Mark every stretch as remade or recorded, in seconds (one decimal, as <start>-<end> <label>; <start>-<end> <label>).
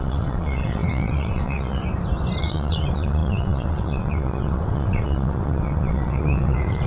0.0-1.8 remade; 1.8-2.4 recorded; 2.4-6.9 remade